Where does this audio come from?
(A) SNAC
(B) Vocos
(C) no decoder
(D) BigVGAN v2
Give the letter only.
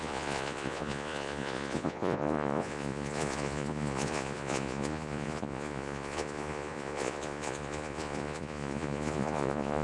B